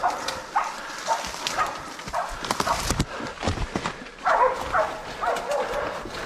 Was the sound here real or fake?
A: real